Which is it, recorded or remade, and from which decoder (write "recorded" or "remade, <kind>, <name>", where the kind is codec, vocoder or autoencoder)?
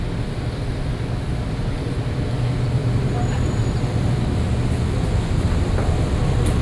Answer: recorded